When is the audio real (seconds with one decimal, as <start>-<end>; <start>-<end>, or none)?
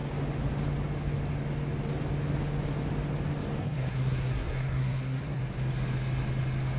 0.0-3.6; 5.4-6.8